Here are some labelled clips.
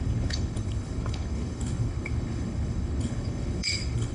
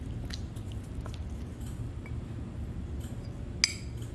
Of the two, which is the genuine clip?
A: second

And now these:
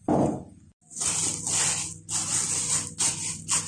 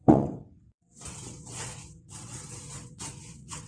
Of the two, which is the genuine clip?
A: first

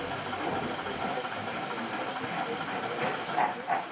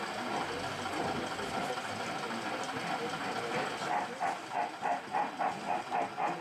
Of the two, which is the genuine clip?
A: second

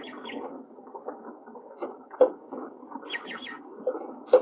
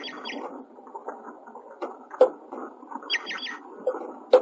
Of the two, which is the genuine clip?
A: second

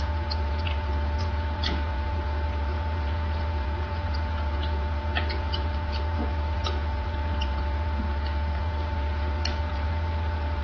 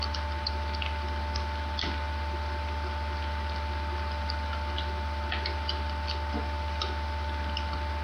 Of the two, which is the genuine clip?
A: second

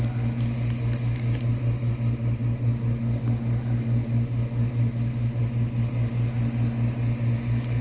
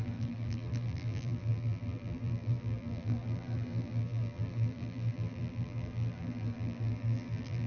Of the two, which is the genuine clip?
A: first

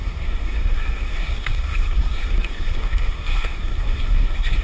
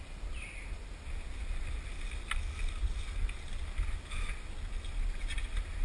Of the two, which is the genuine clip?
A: second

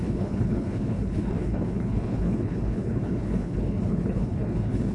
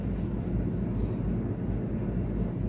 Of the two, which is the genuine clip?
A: second